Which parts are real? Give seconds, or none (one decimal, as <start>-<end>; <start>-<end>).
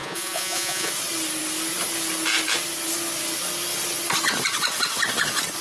0.9-5.6